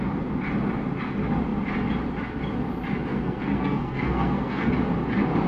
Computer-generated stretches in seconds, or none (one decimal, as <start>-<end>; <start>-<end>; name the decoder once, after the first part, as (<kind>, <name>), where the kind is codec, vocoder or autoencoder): 3.1-4.7 (codec, SNAC)